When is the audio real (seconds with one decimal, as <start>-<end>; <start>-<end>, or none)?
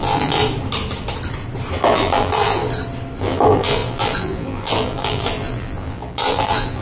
0.4-1.8; 2.6-3.2